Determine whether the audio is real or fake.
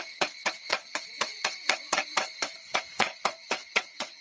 fake